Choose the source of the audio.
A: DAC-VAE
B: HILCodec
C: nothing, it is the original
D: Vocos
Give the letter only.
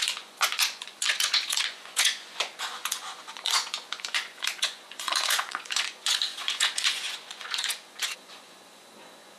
D